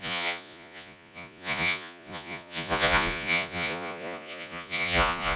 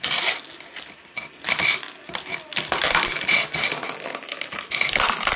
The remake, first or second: first